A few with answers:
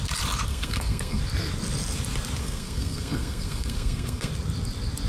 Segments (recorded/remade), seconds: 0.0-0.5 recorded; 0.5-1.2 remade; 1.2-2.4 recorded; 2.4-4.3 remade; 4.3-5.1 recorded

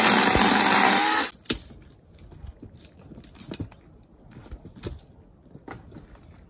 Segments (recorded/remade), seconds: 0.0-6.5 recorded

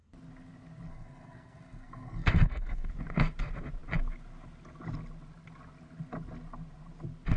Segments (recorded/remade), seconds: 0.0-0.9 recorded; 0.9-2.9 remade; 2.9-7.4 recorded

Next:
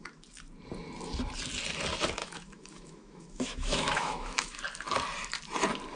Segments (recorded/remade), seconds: 0.0-2.2 recorded; 2.2-4.6 remade; 4.6-6.0 recorded

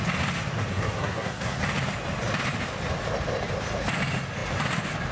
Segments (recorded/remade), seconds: 0.0-0.7 recorded; 0.7-1.6 remade; 1.6-5.1 recorded